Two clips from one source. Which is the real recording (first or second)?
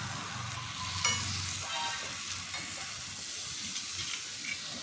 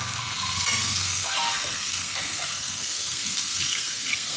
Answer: first